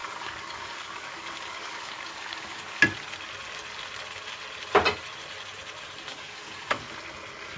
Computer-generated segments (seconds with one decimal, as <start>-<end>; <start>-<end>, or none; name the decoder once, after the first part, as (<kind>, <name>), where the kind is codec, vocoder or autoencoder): 0.0-2.8 (codec, DAC); 6.1-6.8

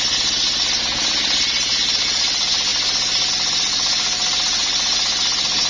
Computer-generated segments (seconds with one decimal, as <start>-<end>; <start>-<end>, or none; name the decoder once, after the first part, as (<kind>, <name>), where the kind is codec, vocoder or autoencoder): none

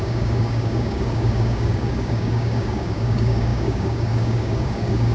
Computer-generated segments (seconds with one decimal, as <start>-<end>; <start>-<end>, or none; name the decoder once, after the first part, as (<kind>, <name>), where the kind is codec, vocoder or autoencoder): 0.0-5.1 (codec, DAC)

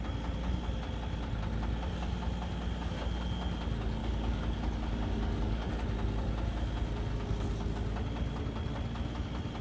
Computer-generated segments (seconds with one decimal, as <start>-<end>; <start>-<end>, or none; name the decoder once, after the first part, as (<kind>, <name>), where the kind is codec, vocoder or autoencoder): 4.0-5.7 (codec, DAC); 7.1-7.7

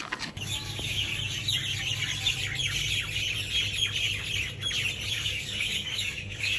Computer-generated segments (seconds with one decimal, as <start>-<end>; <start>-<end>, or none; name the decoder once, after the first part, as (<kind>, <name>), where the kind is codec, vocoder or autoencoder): 0.0-1.1 (codec, DAC); 5.1-6.6

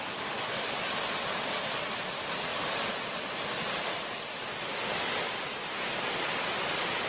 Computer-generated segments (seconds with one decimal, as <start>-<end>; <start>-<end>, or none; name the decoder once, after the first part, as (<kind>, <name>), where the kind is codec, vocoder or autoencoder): none

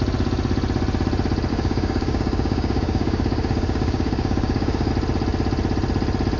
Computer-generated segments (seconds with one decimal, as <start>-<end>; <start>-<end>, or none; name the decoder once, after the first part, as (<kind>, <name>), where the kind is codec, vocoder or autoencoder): 1.5-4.9 (codec, DAC)